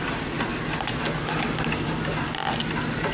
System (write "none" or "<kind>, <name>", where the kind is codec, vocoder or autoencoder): none